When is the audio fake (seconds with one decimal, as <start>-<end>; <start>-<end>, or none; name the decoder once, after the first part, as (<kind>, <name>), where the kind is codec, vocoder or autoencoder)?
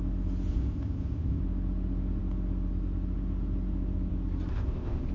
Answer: 0.5-1.4 (codec, ZipCodec); 4.5-5.1